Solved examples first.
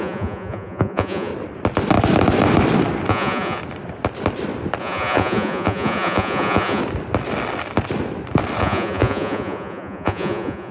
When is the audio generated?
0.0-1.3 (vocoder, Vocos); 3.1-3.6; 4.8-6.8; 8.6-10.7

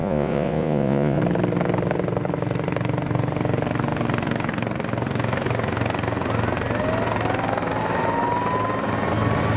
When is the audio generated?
0.0-1.2 (vocoder, Vocos)

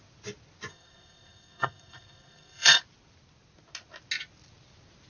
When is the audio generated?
0.7-2.8 (codec, SNAC)

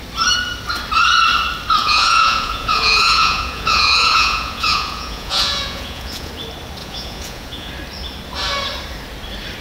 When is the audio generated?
1.8-6.3 (vocoder, Vocos); 6.8-7.7